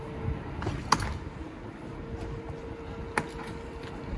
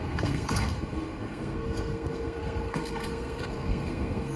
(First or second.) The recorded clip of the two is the first